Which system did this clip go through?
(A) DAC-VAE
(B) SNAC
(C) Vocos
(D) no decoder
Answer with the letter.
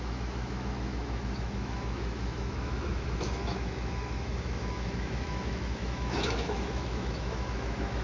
A